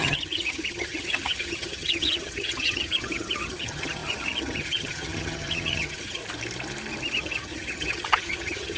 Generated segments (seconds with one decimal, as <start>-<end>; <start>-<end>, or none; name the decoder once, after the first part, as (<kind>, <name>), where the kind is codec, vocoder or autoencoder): 0.0-6.2 (vocoder, HiFi-GAN); 7.2-8.8